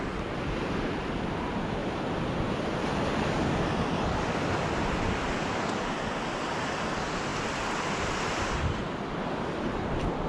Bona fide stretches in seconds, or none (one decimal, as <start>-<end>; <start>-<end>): 0.0-10.3